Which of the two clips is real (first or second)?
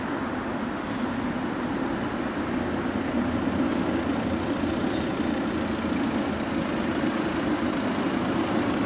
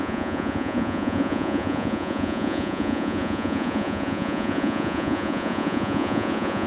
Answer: first